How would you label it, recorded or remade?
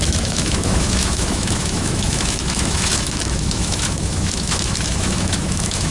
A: remade